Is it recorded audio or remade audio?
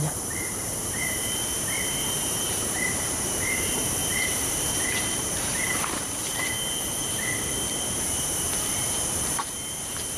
remade